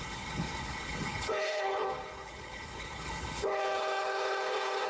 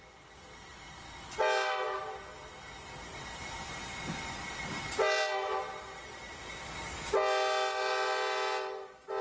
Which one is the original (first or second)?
second